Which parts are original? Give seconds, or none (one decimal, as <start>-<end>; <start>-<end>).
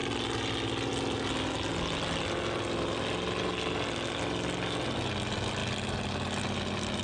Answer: 0.0-7.0